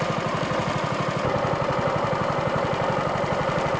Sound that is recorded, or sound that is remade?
recorded